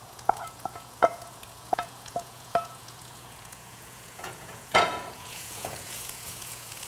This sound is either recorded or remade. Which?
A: remade